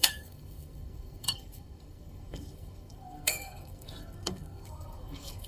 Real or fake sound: fake